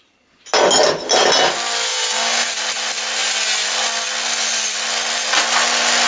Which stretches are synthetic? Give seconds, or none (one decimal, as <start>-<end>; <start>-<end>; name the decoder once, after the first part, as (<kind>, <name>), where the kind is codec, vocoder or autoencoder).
1.9-2.5 (codec, DAC)